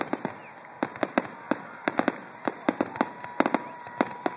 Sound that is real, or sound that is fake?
real